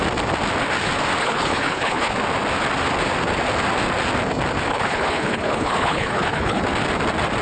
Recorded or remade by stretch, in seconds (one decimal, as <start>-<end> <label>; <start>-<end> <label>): 0.0-1.2 recorded; 1.2-2.1 remade; 2.1-4.7 recorded; 4.7-6.6 remade; 6.6-7.4 recorded